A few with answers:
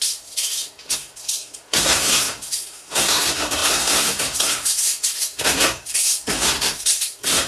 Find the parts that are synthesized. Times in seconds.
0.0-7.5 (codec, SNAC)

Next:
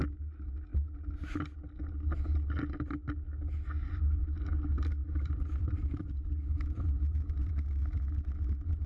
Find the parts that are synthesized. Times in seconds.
5.0-7.5 (vocoder, BigVGAN v2)

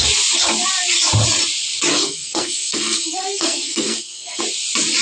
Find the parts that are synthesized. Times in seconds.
1.9-4.4 (codec, SNAC)

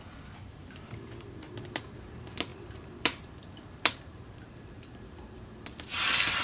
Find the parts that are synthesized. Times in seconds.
0.6-1.5 (vocoder, BigVGAN v2); 2.5-5.6

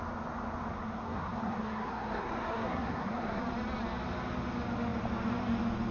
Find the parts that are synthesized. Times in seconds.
0.7-3.4 (codec, SNAC)